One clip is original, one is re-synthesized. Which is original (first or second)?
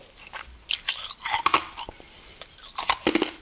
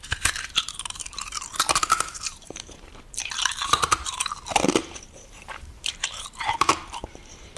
first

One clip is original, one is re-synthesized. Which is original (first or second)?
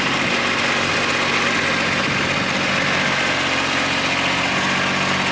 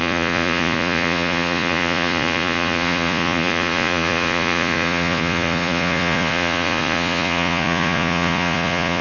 first